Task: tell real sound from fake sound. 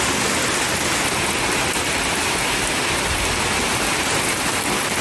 real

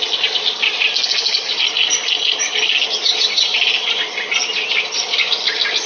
real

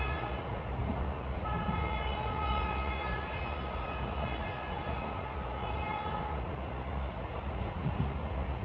fake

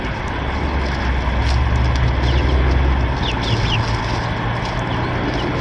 real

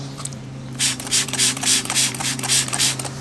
fake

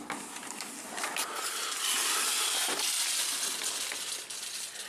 real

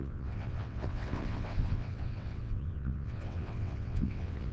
fake